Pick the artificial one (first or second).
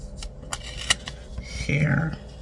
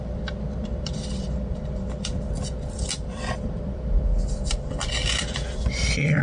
second